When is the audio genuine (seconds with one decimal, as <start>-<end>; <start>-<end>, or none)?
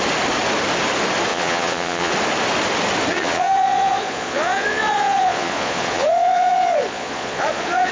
0.0-1.3; 2.1-3.1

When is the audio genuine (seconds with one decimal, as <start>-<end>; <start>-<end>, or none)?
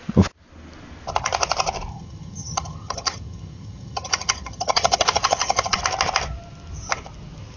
0.0-1.9; 5.8-7.6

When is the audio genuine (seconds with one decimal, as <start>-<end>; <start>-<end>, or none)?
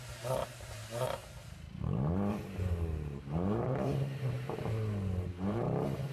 1.2-2.3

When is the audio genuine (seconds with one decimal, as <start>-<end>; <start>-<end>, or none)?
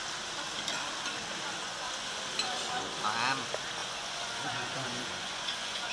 0.0-1.6; 2.2-3.8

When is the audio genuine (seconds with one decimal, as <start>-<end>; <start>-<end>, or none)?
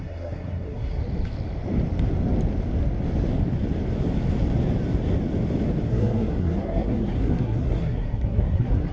1.0-5.9